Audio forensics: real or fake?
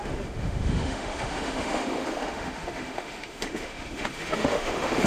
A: fake